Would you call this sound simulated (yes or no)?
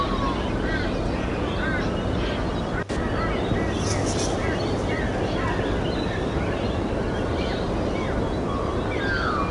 no